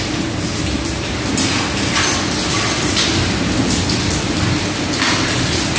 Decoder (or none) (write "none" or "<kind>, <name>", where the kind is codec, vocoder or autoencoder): none